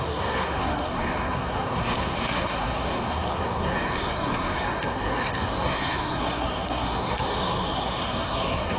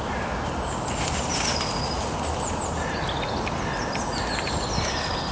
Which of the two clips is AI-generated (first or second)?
first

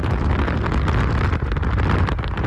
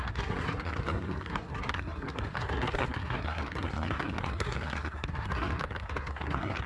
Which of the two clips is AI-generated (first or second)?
second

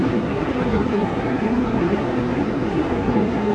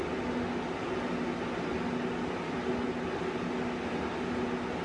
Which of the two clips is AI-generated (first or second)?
first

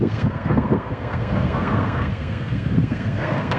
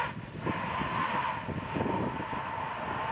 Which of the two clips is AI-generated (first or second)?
first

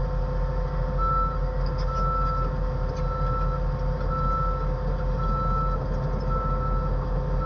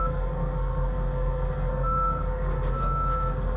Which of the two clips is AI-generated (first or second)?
second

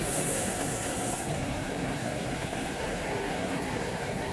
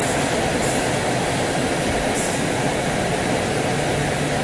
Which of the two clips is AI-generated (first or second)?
first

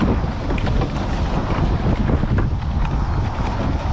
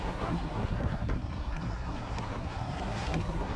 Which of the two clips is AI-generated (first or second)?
second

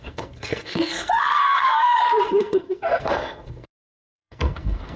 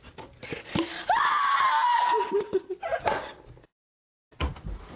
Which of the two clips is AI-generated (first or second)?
first